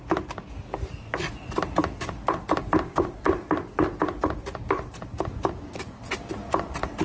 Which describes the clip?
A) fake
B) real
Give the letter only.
B